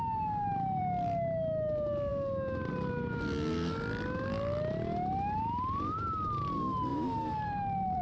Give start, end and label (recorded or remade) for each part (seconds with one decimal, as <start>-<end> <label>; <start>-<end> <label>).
0.0-6.9 recorded; 6.9-8.0 remade